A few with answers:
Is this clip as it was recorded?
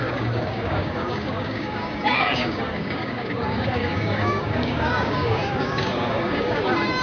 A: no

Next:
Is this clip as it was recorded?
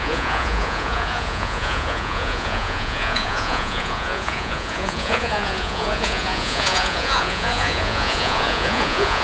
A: no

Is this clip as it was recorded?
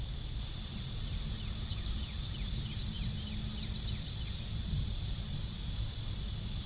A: yes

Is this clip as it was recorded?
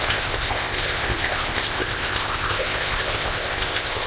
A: no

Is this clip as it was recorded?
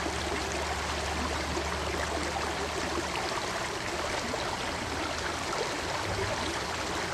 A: yes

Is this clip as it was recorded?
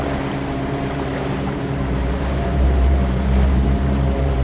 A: no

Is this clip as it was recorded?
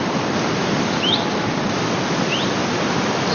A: yes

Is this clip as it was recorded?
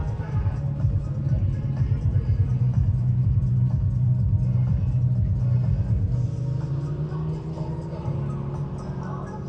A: yes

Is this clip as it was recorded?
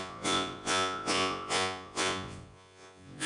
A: no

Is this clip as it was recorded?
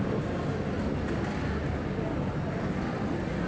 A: yes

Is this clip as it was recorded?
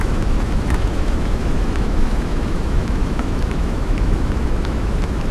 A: no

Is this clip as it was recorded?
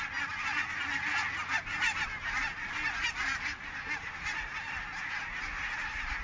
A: yes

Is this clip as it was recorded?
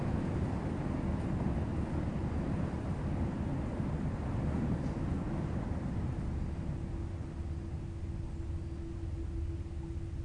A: yes